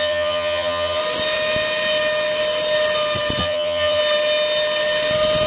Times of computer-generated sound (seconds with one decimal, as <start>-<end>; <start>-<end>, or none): 0.0-1.0; 3.4-4.0